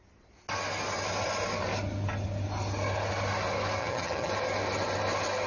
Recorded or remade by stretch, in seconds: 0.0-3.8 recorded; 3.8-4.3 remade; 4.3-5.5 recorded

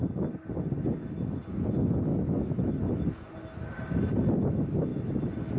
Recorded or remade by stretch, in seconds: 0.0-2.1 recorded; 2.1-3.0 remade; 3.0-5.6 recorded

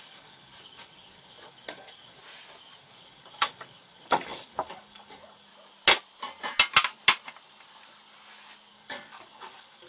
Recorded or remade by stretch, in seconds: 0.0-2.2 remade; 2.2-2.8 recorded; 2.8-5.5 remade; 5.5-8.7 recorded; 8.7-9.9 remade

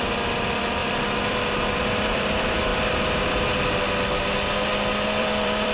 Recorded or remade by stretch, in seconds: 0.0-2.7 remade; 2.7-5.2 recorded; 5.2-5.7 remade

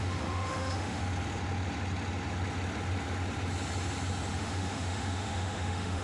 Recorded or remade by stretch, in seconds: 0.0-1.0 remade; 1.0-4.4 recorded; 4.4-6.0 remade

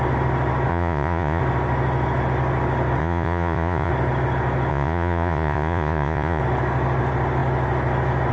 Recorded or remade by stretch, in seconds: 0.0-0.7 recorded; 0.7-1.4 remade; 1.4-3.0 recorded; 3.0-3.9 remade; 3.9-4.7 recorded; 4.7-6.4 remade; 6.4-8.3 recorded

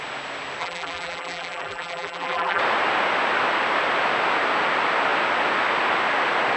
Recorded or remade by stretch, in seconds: 0.0-0.6 recorded; 0.6-2.6 remade; 2.6-6.6 recorded

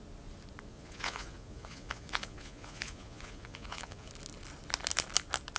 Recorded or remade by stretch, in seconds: 0.0-0.7 recorded; 0.7-4.1 remade; 4.1-5.6 recorded